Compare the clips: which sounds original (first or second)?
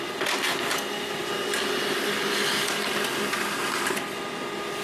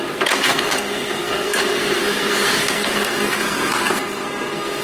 first